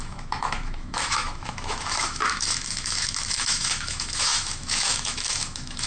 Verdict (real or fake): fake